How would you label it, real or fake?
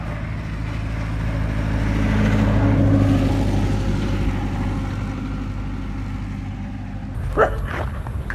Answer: real